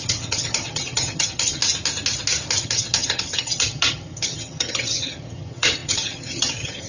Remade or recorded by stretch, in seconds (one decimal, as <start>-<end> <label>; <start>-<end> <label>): 0.0-1.6 remade; 1.6-2.6 recorded; 2.6-6.9 remade